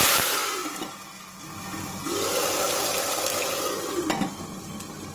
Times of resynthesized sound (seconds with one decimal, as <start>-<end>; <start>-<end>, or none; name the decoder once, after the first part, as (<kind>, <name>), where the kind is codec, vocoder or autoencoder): none